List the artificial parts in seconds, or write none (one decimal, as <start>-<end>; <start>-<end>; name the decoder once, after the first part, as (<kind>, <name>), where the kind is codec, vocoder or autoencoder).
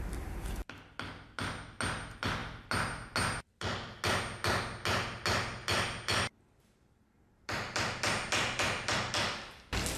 none